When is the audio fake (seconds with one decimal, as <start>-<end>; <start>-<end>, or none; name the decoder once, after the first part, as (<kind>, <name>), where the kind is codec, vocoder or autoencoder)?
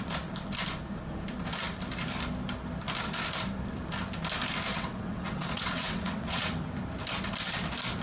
4.7-6.4 (vocoder, WaveNeXt)